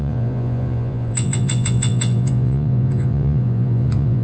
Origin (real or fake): fake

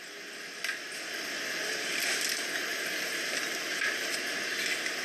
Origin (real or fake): fake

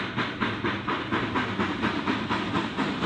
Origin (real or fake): real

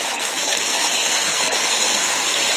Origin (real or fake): fake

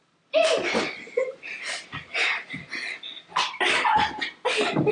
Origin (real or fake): real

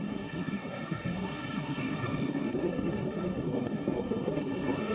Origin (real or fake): fake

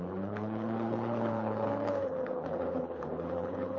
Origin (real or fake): fake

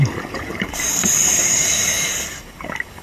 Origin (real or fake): fake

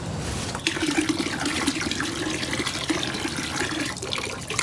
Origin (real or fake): fake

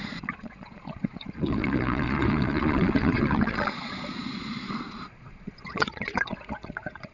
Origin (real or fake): fake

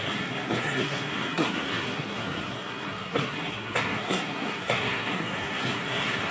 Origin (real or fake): fake